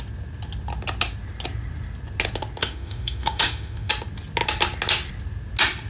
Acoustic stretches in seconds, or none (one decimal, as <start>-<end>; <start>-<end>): 0.0-2.6; 3.9-5.9